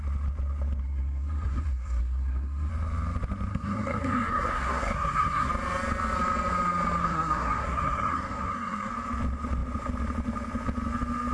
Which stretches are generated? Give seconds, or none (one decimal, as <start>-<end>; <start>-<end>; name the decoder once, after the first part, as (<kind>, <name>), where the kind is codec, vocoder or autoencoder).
0.8-2.7 (codec, SNAC); 3.5-5.5; 7.0-8.9